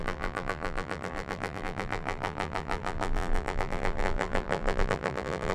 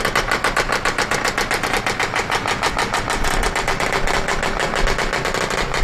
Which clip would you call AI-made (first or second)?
first